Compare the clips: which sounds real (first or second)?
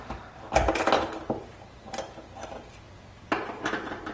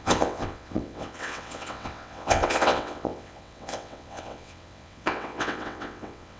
first